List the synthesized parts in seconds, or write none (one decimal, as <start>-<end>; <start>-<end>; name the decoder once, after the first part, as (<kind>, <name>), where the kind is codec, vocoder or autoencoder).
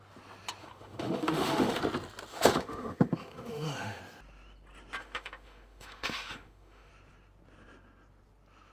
0.6-1.8 (autoencoder, DAC-VAE); 2.3-4.0; 5.0-6.9